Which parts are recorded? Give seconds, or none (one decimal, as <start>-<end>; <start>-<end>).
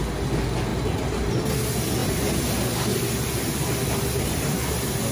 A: 0.0-0.7; 1.3-5.1